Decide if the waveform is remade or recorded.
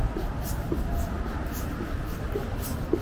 recorded